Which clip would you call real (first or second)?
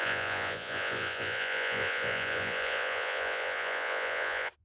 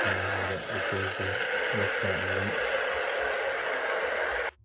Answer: second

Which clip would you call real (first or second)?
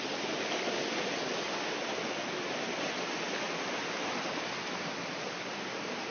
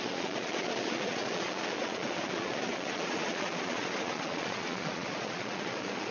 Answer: first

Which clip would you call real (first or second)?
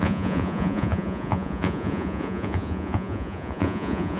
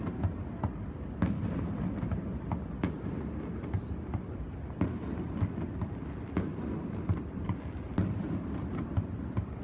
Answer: second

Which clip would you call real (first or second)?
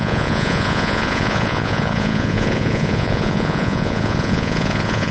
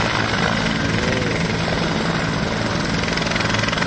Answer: second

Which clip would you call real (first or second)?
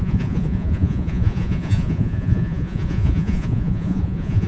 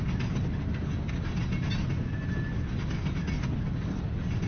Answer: second